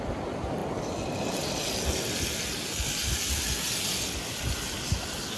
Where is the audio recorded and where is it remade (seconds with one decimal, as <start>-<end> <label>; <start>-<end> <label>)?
0.0-5.4 recorded